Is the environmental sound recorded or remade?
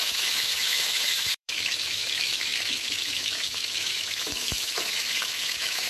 remade